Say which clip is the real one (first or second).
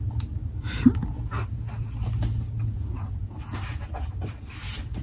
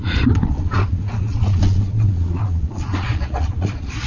first